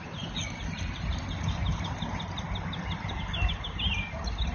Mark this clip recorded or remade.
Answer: recorded